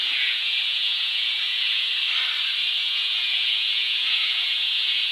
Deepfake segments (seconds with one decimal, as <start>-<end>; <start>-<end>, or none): 0.0-1.9; 2.8-5.1

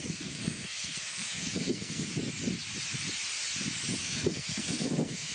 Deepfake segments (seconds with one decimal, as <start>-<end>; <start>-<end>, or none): 0.0-2.1; 4.0-5.3

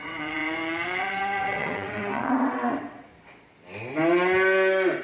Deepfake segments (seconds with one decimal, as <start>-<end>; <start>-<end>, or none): 0.0-3.1